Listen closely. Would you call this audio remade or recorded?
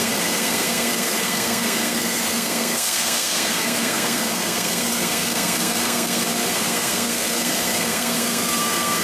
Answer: remade